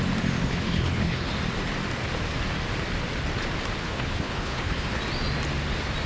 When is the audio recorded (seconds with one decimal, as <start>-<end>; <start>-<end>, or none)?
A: 0.0-0.4; 1.3-3.8; 5.0-6.1